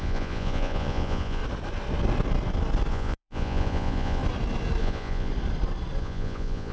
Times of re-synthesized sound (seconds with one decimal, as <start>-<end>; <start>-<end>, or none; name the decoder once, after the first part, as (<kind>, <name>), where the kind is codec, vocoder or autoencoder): 0.0-1.4 (vocoder, Vocos); 2.9-4.2; 4.8-5.3; 6.0-6.7